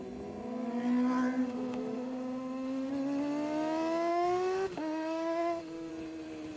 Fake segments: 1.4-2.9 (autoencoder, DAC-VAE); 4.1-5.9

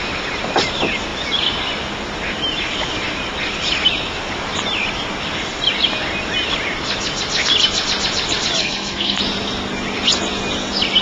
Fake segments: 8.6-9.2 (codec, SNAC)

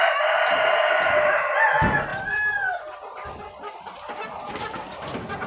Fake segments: none